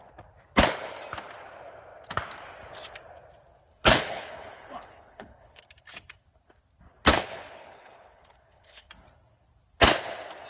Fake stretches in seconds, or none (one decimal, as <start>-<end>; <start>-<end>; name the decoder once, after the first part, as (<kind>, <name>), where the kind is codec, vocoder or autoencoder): 3.7-5.6 (codec, HILCodec); 7.1-8.9